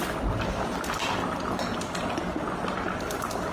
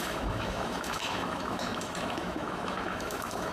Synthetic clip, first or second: second